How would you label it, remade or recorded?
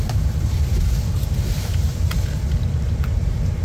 remade